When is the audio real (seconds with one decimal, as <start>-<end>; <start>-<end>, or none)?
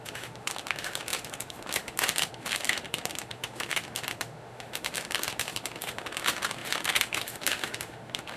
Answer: none